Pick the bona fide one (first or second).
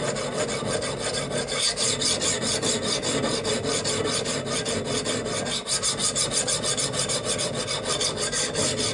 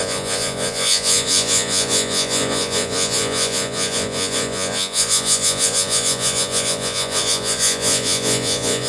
first